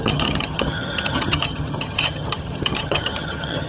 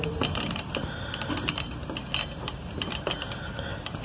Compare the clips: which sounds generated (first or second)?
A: first